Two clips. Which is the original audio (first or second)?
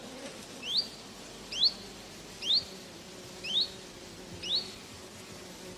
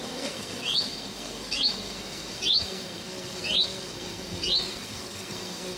first